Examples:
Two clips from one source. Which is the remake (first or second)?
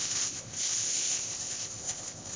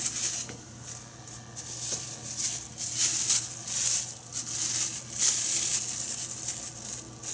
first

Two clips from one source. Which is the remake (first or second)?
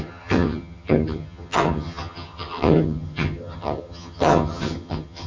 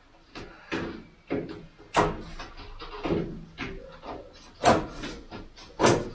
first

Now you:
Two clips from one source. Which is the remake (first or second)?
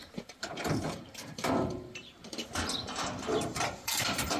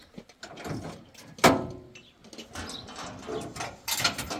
first